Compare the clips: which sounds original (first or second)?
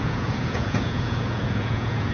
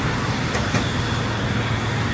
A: second